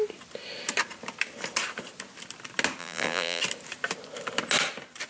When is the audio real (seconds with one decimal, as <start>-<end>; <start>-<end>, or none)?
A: 0.0-2.8; 3.4-5.1